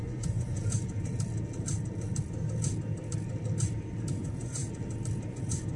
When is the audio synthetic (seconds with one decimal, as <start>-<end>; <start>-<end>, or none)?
0.0-0.6; 4.1-4.6; 5.3-5.8